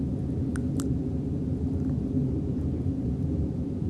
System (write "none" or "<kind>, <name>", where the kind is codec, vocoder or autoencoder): vocoder, BigVGAN v2